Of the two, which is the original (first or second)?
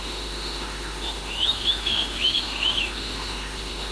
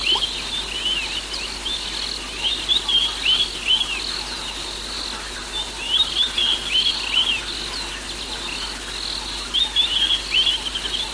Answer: second